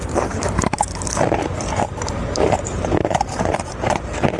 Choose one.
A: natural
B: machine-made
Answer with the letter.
B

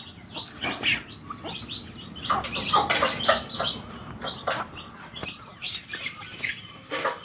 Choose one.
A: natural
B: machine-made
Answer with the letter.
A